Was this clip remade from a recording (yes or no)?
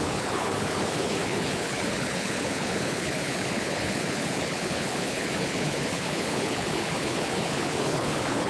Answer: yes